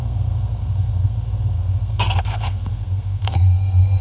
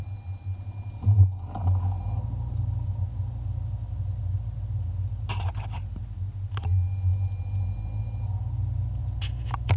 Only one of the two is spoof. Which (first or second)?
first